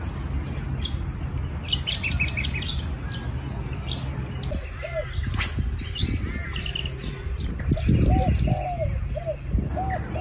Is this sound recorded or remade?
recorded